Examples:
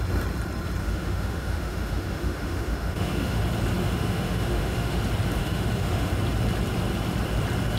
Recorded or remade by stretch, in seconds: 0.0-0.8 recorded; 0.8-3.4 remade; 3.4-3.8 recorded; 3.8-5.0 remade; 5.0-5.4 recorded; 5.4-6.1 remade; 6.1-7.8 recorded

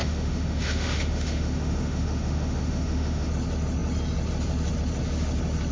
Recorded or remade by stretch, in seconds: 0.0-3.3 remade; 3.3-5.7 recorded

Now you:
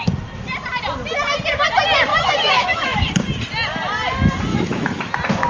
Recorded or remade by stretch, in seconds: 0.0-2.1 recorded; 2.1-3.1 remade; 3.1-4.5 recorded; 4.5-5.1 remade; 5.1-5.5 recorded

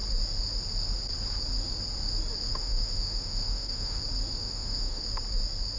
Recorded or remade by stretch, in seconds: 0.0-2.5 recorded; 2.5-4.0 remade; 4.0-4.4 recorded; 4.4-5.0 remade; 5.0-5.8 recorded

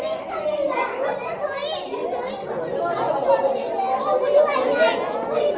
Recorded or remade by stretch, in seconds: 0.0-5.6 recorded

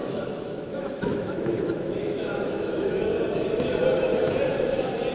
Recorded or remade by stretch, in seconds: 0.0-3.1 remade; 3.1-5.1 recorded